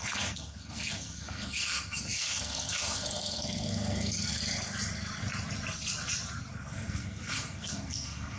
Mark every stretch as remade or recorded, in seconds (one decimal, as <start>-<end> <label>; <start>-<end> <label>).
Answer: 0.0-4.4 remade; 4.4-6.5 recorded; 6.5-8.4 remade